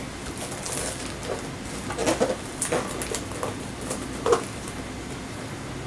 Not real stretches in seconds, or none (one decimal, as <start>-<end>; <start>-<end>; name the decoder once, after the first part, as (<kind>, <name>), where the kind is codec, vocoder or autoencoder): none